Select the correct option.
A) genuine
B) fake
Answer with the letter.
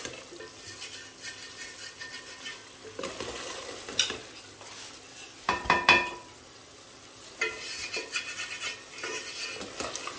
A